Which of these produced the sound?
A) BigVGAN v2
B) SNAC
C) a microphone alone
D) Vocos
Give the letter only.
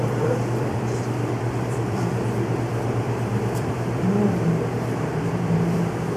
A